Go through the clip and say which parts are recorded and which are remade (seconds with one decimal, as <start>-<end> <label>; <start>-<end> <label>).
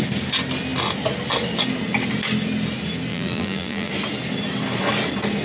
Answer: 0.0-3.1 recorded; 3.1-3.9 remade; 3.9-5.4 recorded